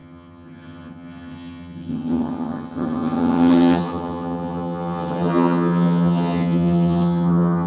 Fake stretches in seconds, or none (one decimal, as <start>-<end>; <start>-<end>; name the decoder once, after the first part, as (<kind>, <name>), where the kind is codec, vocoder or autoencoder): 0.0-7.7 (vocoder, HiFi-GAN)